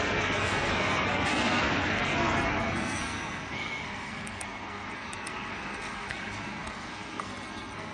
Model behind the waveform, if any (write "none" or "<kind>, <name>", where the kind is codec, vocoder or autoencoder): codec, SNAC